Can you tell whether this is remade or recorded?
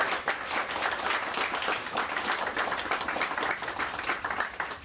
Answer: recorded